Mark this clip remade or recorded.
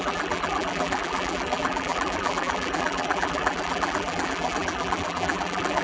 remade